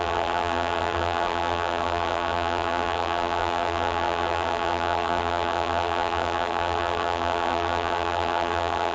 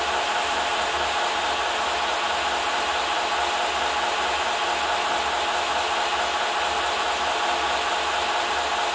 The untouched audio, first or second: second